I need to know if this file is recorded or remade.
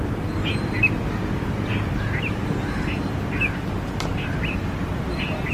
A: recorded